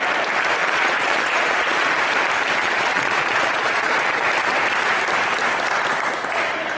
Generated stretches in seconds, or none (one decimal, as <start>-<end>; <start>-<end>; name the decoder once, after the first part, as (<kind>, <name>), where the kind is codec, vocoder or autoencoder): 0.6-1.9 (vocoder, Vocos); 2.6-3.9